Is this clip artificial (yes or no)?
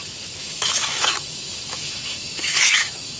yes